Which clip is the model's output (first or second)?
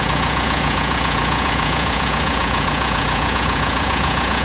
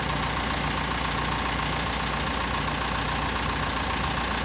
first